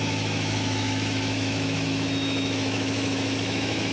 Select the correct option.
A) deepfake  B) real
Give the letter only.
A